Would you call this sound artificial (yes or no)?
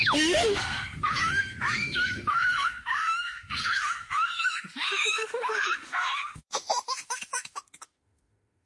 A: yes